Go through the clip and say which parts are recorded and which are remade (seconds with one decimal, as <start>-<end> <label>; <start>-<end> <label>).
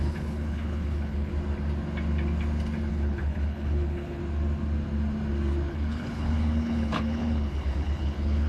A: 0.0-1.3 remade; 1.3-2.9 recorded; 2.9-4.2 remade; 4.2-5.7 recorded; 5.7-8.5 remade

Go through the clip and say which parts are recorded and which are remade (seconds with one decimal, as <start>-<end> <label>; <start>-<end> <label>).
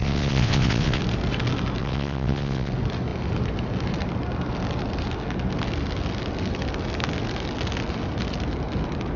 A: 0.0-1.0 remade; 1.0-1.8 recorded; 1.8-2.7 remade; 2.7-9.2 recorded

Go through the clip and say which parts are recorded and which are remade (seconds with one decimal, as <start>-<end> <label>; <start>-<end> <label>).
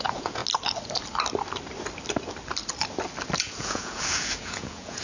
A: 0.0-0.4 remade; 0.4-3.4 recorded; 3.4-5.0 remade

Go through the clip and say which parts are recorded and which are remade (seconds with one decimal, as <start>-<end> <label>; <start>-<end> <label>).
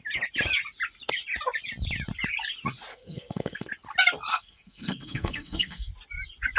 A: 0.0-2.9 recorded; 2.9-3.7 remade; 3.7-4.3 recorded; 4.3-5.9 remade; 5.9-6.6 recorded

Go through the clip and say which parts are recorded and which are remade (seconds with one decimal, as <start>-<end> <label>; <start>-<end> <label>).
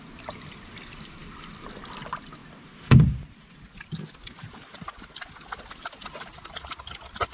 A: 0.0-7.3 recorded